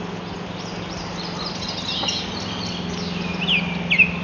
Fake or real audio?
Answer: real